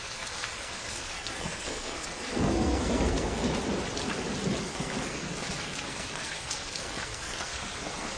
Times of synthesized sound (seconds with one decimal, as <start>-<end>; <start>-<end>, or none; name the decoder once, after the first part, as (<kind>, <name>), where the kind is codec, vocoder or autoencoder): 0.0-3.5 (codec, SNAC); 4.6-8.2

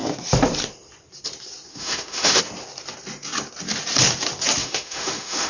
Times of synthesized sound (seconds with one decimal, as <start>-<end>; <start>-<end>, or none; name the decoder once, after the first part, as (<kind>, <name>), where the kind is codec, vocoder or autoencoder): 1.7-2.4 (autoencoder, DAC-VAE); 4.6-5.5

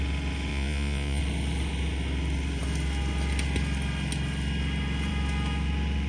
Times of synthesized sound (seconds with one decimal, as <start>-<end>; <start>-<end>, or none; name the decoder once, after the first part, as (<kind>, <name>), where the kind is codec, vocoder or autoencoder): 0.5-1.2 (vocoder, Vocos)